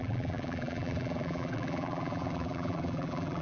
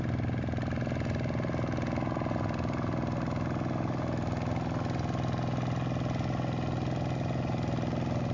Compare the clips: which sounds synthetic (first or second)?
first